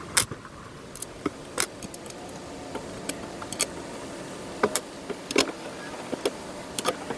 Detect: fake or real real